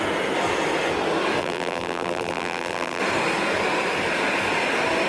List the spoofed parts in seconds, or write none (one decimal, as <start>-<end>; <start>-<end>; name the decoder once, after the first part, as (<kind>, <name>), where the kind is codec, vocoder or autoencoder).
1.4-3.0 (vocoder, BigVGAN v2)